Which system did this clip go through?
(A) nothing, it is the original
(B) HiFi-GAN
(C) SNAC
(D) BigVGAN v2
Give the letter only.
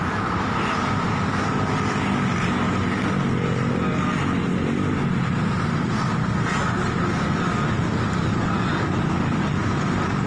A